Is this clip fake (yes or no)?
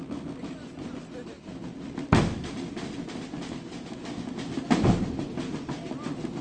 no